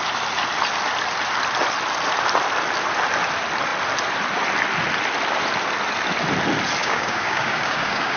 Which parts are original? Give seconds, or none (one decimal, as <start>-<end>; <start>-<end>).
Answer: 0.0-6.8